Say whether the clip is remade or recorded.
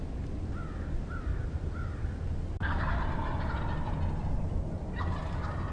recorded